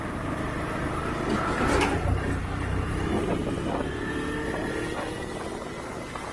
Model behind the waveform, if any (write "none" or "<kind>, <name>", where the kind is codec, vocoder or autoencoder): none